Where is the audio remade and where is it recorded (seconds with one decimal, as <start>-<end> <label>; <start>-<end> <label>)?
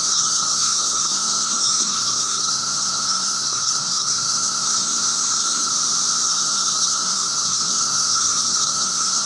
0.0-5.7 remade; 5.7-6.2 recorded; 6.2-9.3 remade